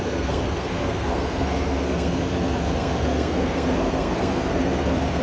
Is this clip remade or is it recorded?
remade